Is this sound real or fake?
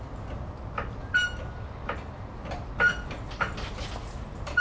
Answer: real